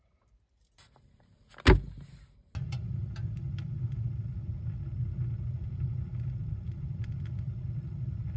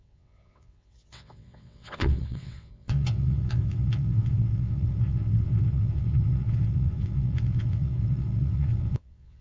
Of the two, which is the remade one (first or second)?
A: second